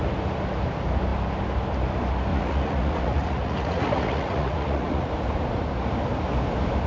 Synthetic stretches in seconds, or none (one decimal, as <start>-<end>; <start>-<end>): 2.3-5.1